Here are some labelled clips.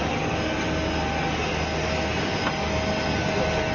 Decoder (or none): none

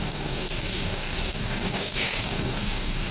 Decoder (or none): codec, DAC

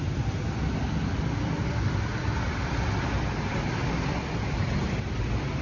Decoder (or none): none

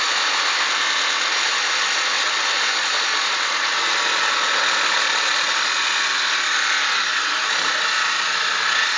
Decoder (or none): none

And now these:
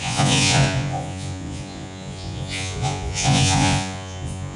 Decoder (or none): vocoder, Vocos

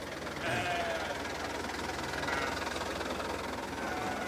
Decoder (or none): none